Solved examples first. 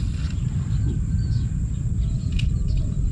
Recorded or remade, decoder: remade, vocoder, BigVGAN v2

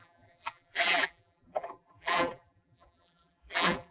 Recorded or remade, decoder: remade, vocoder, BigVGAN v2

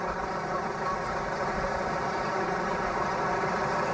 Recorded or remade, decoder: remade, vocoder, BigVGAN v2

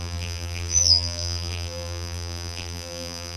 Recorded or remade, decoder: remade, vocoder, BigVGAN v2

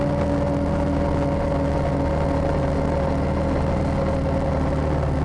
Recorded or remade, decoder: recorded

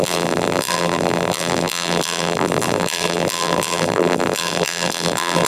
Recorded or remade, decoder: remade, vocoder, BigVGAN v2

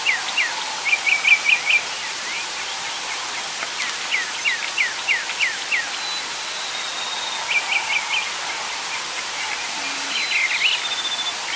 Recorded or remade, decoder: recorded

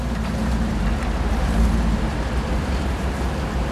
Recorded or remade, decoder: remade, vocoder, BigVGAN v2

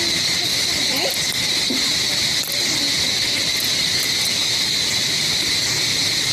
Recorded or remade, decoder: recorded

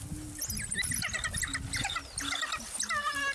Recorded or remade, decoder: recorded